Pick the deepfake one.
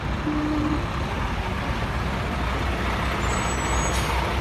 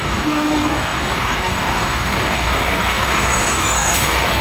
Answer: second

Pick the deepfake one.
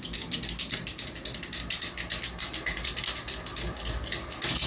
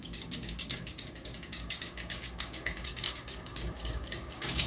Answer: second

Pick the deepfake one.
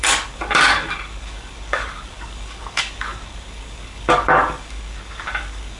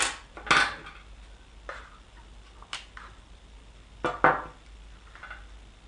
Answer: first